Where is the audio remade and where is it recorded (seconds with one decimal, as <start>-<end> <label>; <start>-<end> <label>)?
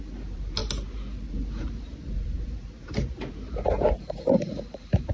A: 0.0-0.6 remade; 0.6-1.3 recorded; 1.3-5.1 remade